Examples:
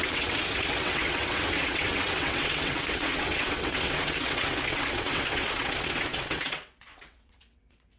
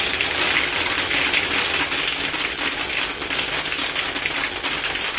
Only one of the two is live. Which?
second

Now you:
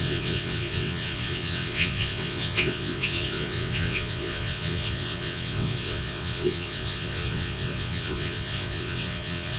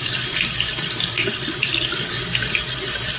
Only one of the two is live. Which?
second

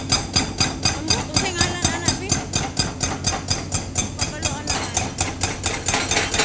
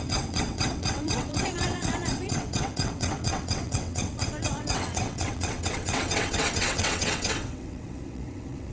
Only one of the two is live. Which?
first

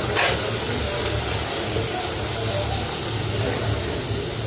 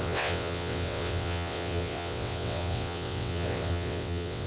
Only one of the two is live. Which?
first